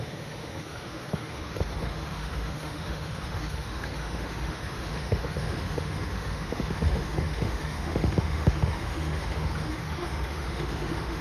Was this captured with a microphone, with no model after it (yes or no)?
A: no